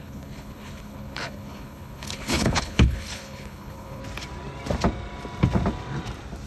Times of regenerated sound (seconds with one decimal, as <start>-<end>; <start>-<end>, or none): 0.0-4.0